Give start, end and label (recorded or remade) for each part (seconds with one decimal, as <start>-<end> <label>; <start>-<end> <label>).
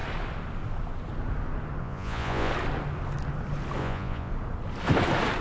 0.0-1.8 recorded; 1.8-2.5 remade; 2.5-3.8 recorded; 3.8-4.3 remade; 4.3-5.4 recorded